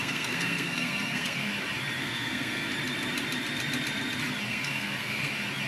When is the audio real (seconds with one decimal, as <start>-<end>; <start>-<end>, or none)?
1.5-2.0; 2.7-4.5; 5.3-5.7